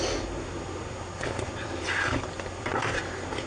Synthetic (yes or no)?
no